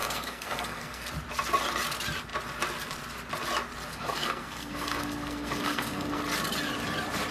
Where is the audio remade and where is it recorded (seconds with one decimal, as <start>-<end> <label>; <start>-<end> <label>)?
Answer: 0.0-1.1 remade; 1.1-3.9 recorded; 3.9-6.2 remade; 6.2-7.3 recorded